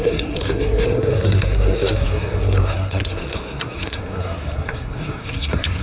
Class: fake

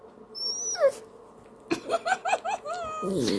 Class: real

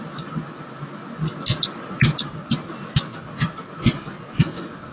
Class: real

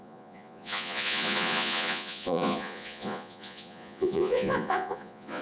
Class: fake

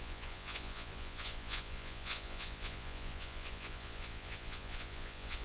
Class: fake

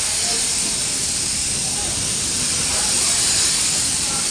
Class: real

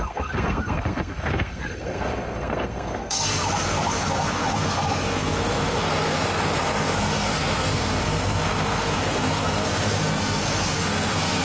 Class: fake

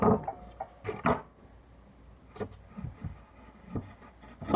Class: real